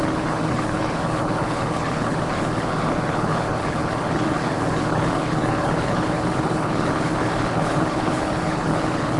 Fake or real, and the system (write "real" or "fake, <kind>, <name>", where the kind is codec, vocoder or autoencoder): fake, codec, HILCodec